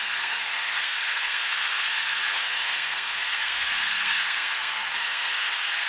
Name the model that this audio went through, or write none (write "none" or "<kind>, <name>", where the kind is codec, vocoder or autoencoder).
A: codec, SNAC